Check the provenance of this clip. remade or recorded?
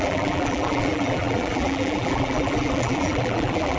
remade